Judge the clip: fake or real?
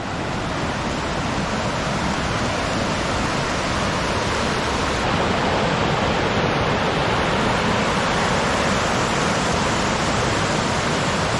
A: real